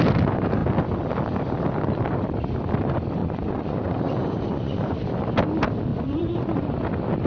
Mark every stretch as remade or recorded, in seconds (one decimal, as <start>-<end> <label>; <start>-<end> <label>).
0.0-3.2 recorded; 3.2-5.0 remade; 5.0-5.9 recorded; 5.9-6.7 remade; 6.7-7.3 recorded